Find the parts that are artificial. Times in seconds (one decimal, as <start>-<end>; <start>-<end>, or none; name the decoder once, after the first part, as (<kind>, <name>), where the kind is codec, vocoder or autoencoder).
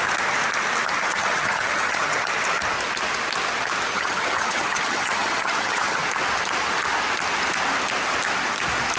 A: 1.1-2.2 (vocoder, HiFi-GAN); 3.9-6.0